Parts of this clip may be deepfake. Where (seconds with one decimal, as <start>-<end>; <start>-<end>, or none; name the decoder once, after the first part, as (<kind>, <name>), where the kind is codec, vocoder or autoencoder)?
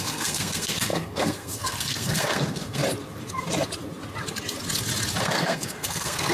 0.0-2.8 (codec, SNAC); 5.2-6.3